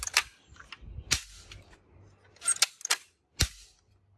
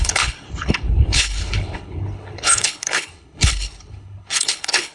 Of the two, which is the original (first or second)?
first